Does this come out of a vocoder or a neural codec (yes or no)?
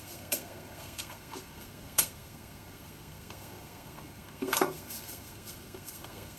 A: yes